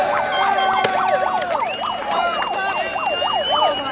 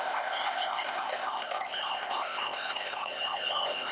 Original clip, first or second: first